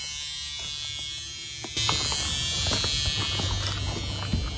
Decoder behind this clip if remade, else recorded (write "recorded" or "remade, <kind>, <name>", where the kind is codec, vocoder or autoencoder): recorded